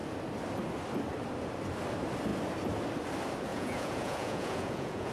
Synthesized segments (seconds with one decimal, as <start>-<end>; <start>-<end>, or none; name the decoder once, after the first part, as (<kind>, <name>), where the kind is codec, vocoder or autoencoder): 3.5-5.1 (vocoder, Vocos)